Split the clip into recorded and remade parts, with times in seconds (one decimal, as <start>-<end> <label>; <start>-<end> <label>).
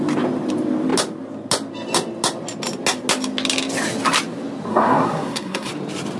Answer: 0.0-4.7 recorded; 4.7-5.7 remade; 5.7-6.2 recorded